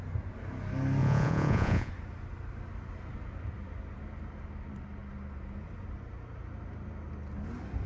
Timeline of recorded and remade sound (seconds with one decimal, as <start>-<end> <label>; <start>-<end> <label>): 0.0-1.0 recorded; 1.0-1.9 remade; 1.9-7.9 recorded